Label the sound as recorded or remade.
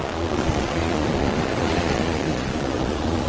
remade